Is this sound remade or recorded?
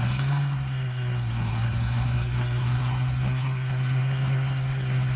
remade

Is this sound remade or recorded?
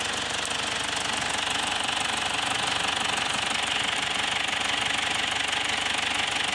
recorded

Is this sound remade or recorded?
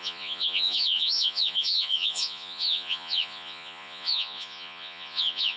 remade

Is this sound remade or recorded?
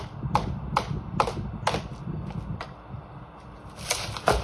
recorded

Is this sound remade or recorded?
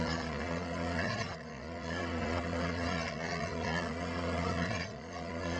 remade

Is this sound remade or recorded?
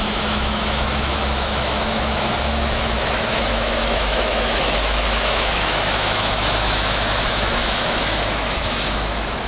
remade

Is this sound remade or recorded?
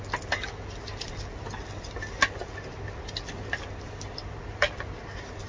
recorded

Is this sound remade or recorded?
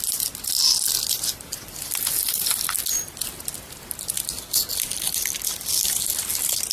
recorded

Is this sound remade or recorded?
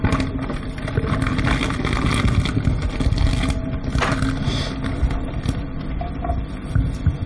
recorded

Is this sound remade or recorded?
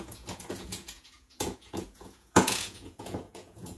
remade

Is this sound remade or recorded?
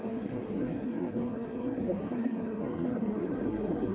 remade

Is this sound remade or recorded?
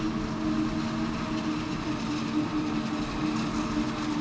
recorded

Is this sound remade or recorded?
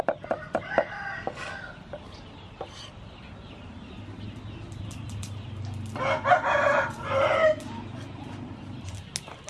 recorded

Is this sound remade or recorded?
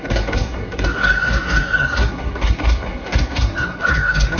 remade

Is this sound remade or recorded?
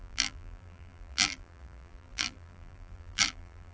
remade